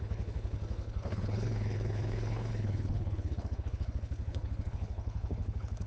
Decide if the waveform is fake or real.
fake